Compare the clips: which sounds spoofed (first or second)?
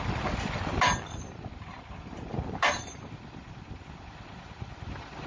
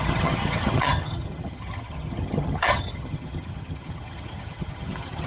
second